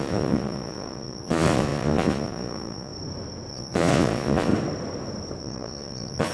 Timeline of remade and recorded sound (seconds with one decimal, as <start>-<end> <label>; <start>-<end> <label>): 0.0-2.9 remade; 2.9-3.5 recorded; 3.5-4.5 remade; 4.5-5.4 recorded; 5.4-6.3 remade